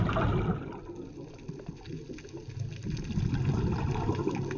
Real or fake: real